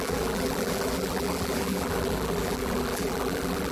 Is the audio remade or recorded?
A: remade